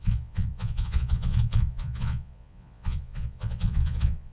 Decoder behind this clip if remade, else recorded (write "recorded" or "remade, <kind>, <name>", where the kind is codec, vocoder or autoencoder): remade, vocoder, Vocos